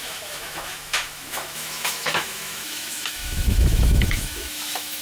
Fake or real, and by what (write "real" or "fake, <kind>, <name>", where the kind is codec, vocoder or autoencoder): fake, autoencoder, DAC-VAE